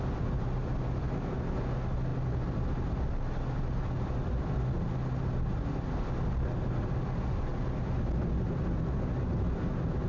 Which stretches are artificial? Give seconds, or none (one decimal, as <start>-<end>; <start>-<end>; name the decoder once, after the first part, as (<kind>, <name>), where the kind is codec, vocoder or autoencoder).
none